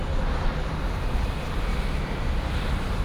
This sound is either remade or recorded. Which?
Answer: recorded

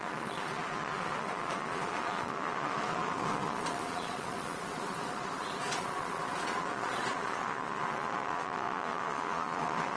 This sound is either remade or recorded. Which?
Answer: remade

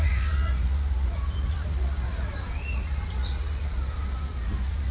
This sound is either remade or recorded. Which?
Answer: remade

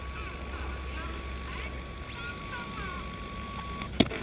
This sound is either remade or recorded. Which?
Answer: recorded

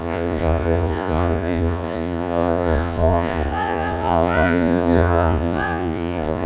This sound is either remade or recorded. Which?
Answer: remade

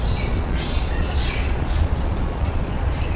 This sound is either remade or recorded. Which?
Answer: remade